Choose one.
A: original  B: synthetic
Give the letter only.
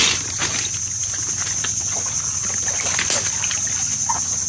A